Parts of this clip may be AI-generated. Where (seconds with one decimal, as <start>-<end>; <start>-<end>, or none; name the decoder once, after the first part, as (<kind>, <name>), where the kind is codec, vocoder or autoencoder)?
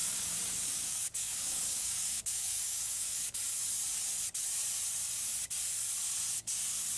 0.0-3.4 (codec, DAC)